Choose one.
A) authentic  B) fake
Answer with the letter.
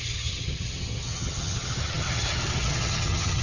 B